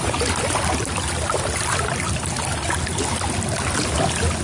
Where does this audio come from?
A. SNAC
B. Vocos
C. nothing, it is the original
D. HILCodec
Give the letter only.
C